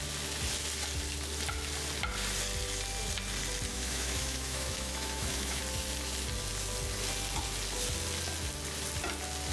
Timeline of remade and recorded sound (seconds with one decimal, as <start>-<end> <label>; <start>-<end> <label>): 0.0-3.7 recorded; 3.7-5.6 remade; 5.6-9.5 recorded